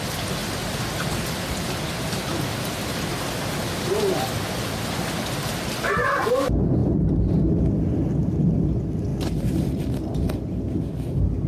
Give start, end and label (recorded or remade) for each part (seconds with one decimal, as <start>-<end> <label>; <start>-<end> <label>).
0.0-0.4 recorded; 0.4-3.1 remade; 3.1-6.8 recorded; 6.8-7.6 remade; 7.6-9.1 recorded; 9.1-9.8 remade; 9.8-11.5 recorded